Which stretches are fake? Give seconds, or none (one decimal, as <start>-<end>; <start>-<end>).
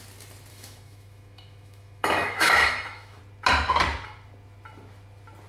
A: 0.5-3.2